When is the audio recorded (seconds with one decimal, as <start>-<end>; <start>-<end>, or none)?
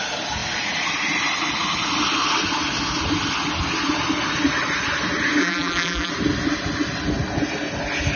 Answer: 0.0-5.4; 6.1-8.2